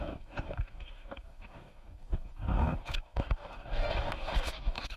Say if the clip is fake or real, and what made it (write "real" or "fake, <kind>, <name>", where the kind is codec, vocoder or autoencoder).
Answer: fake, codec, DAC